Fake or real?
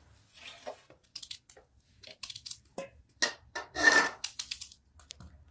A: fake